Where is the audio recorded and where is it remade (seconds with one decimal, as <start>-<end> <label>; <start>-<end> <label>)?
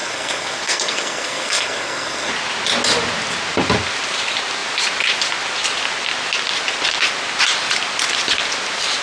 0.0-2.3 remade; 2.3-9.0 recorded